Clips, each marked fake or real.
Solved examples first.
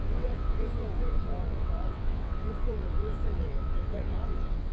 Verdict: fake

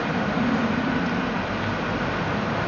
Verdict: real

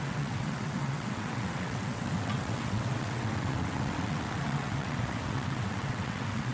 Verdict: fake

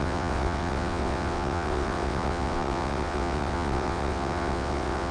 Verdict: fake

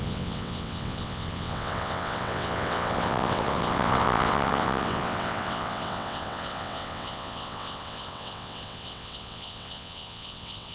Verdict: fake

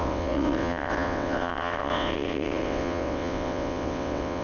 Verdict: fake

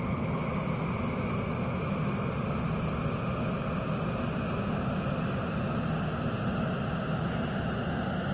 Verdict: real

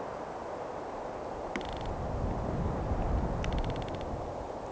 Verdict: real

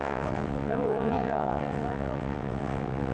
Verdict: fake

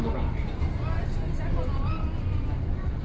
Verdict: real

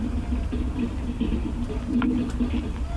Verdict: real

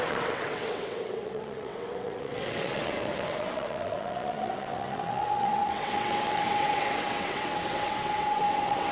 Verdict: fake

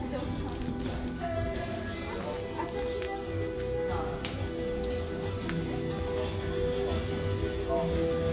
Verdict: real